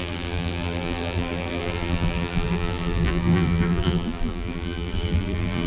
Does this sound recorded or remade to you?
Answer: remade